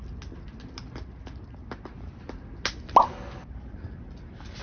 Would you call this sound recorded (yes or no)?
yes